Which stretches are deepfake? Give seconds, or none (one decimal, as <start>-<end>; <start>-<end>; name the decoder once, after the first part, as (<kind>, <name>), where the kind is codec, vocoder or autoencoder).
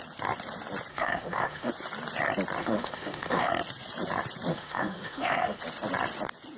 0.9-1.7 (autoencoder, DAC-VAE); 2.6-3.5; 4.5-5.6